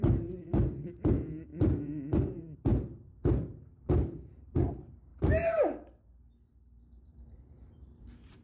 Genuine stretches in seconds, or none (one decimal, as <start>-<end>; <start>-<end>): none